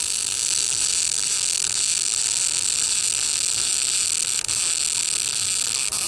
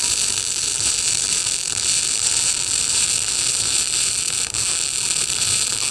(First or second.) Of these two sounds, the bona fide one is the first